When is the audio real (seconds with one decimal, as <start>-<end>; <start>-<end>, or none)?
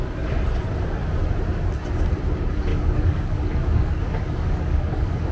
0.0-2.7